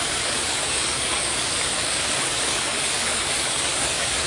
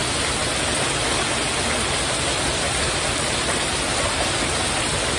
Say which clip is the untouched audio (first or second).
second